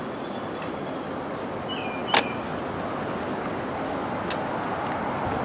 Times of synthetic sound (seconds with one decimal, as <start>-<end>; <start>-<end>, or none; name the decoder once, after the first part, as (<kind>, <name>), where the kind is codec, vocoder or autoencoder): none